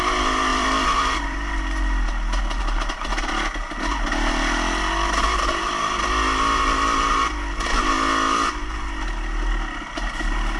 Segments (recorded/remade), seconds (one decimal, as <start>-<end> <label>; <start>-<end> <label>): 0.0-10.6 recorded